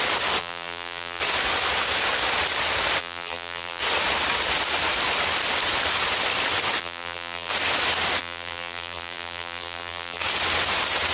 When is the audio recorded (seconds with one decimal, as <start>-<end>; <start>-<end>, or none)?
0.0-0.4; 1.2-3.0; 3.8-6.8; 7.5-8.2; 10.2-11.1